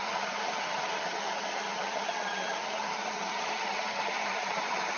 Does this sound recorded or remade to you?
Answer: remade